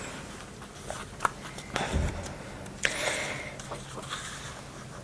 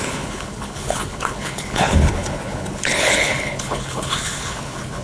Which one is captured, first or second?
first